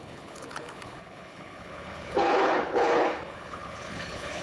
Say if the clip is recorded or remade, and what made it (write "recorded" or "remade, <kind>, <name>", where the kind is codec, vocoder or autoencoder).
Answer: remade, codec, HILCodec